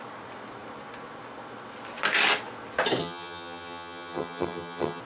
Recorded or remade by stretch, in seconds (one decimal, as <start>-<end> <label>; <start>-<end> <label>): 0.0-3.0 recorded; 3.0-5.0 remade